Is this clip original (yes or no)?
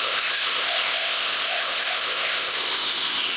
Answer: no